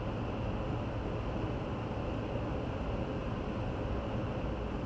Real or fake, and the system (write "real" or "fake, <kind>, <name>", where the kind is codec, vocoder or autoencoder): real